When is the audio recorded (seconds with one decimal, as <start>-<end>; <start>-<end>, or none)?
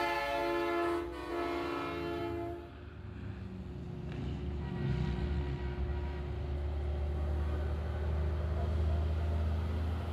0.0-10.1